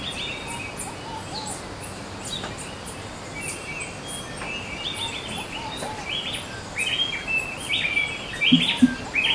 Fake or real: real